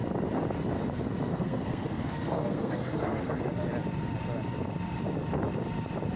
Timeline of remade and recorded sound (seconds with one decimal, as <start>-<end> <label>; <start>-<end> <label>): 0.0-1.3 recorded; 1.3-3.4 remade; 3.4-6.2 recorded

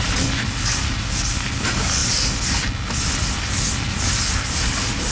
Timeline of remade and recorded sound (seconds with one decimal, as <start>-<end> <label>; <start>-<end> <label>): 0.0-5.1 recorded

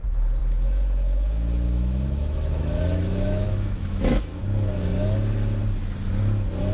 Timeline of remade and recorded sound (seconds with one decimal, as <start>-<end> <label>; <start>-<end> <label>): 0.0-0.4 recorded; 0.4-4.4 remade; 4.4-6.7 recorded

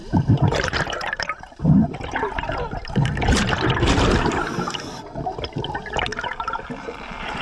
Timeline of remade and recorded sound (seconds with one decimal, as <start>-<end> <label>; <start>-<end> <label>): 0.0-4.4 remade; 4.4-6.1 recorded; 6.1-7.4 remade

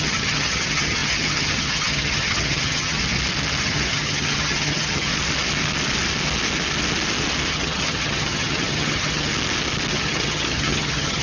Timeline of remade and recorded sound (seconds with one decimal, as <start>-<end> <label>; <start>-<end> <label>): 0.0-3.0 remade; 3.0-3.6 recorded; 3.6-5.1 remade; 5.1-7.5 recorded; 7.5-9.3 remade; 9.3-9.9 recorded; 9.9-11.2 remade